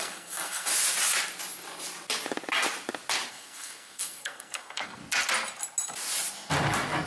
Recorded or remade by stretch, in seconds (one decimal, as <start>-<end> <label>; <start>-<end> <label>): 0.0-0.7 remade; 0.7-3.3 recorded; 3.3-5.0 remade; 5.0-7.1 recorded